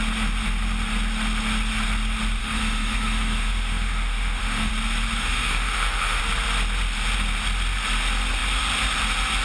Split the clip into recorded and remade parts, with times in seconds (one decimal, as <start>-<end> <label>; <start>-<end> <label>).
0.0-2.4 recorded; 2.4-4.7 remade; 4.7-5.2 recorded; 5.2-6.2 remade; 6.2-9.4 recorded